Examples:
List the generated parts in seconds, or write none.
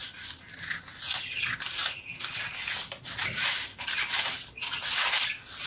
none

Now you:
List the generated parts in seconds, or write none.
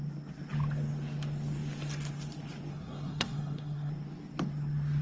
2.7-3.9 (codec, SNAC)